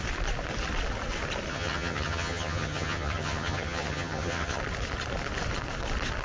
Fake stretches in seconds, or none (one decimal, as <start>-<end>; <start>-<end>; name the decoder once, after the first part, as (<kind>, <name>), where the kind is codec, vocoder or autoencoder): 1.5-4.6 (vocoder, HiFi-GAN)